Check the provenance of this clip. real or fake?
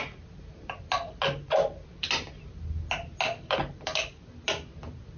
real